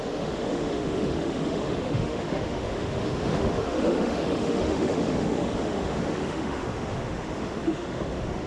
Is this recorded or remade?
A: remade